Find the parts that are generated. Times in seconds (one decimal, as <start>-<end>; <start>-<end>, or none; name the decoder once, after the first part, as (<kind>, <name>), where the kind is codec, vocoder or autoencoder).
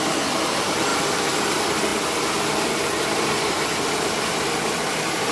0.9-1.4 (vocoder, BigVGAN v2); 1.9-5.3